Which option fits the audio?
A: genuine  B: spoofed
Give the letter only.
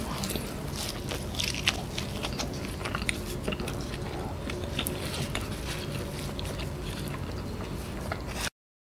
A